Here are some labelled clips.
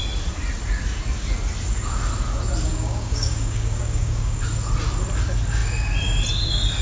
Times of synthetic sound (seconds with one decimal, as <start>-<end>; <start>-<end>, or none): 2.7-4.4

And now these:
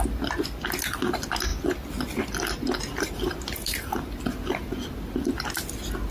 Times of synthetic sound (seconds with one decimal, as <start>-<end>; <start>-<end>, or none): 1.5-2.2

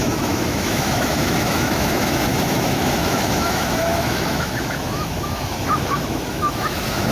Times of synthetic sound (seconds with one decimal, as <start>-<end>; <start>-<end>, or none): 0.0-7.1

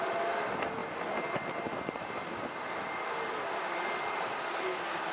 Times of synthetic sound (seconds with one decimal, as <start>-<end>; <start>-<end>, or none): none

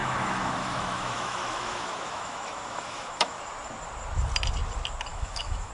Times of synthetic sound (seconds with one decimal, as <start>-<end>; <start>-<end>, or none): 0.0-3.4; 5.1-5.7